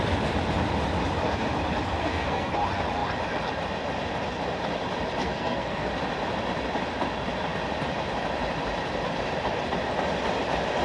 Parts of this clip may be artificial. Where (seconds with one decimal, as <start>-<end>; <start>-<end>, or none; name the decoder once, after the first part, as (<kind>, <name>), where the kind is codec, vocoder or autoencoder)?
2.0-2.5 (codec, SNAC); 5.2-5.9